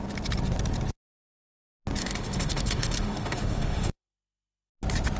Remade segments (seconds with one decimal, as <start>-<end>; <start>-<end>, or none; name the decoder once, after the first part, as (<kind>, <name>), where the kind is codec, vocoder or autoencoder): 2.0-4.7 (autoencoder, DAC-VAE)